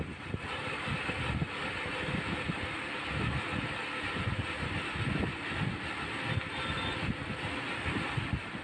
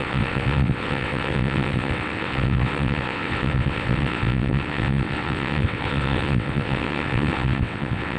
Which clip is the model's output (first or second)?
second